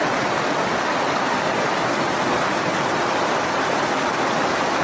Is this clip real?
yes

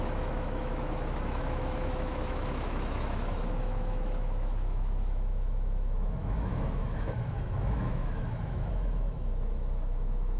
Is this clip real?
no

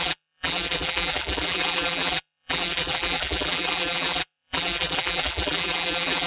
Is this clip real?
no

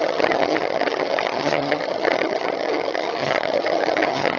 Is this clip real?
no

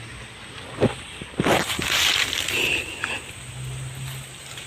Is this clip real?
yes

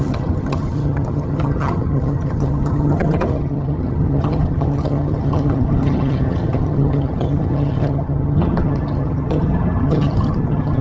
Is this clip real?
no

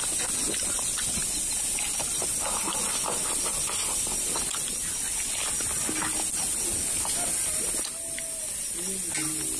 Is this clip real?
yes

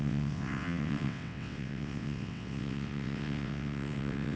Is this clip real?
no